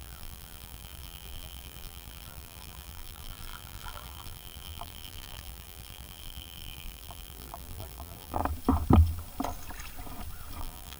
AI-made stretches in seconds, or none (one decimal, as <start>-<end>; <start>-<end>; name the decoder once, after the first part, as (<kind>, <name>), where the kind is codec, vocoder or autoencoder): 0.0-8.4 (vocoder, BigVGAN v2); 10.6-11.0